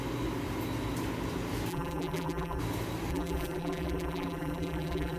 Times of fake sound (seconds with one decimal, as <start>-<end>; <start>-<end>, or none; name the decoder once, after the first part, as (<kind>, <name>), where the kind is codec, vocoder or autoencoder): 1.7-2.6 (vocoder, BigVGAN v2); 3.1-5.2